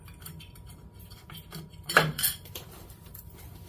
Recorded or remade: remade